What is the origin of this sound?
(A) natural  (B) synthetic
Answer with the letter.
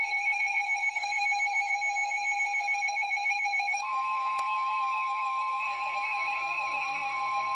B